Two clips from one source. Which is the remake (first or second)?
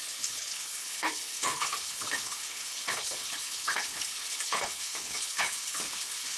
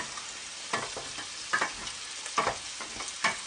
first